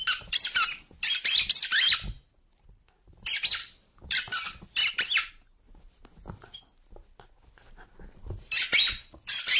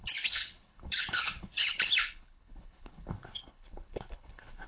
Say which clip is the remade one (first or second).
second